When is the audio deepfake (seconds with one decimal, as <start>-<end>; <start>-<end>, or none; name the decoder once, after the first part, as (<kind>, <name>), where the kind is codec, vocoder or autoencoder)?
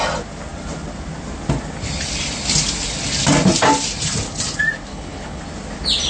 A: 4.9-5.4 (codec, HILCodec)